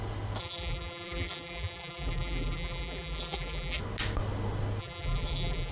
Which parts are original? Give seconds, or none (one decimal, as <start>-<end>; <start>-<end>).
0.0-0.4; 3.8-4.8